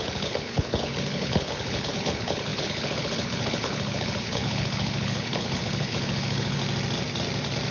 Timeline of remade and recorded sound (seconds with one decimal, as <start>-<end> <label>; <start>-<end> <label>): 0.0-6.6 remade; 6.6-7.7 recorded